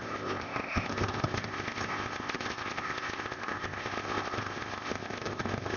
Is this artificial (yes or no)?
yes